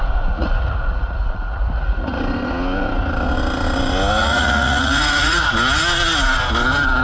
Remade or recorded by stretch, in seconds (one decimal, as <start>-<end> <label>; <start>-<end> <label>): 0.0-2.2 remade; 2.2-4.2 recorded; 4.2-5.5 remade; 5.5-7.0 recorded